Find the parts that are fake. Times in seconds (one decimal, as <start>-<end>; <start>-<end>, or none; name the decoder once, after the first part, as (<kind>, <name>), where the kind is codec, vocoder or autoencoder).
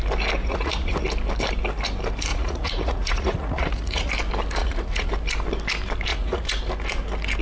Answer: 0.4-1.0 (vocoder, Vocos); 2.3-4.1; 4.6-5.1; 6.1-6.6